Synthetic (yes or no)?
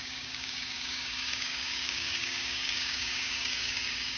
yes